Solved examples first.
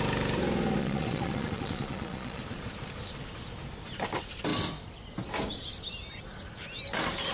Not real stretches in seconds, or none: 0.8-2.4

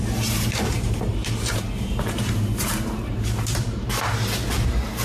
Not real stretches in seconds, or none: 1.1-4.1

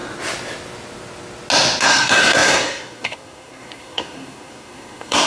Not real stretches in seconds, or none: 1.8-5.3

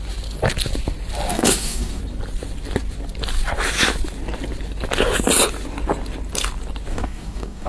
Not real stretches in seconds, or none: 1.3-2.0; 6.9-7.7

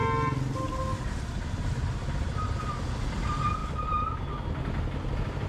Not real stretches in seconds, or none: none